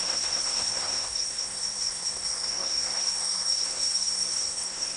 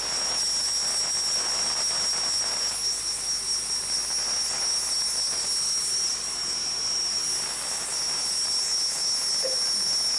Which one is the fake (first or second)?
first